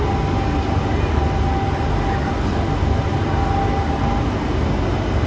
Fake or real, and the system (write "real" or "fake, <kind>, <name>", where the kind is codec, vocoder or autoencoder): real